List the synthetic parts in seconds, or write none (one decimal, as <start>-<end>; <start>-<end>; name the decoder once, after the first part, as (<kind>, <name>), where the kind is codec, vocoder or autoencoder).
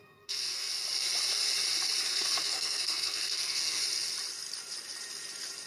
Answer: 0.0-0.7 (codec, SNAC); 2.1-3.8